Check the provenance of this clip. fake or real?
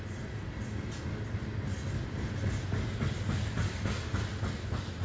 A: real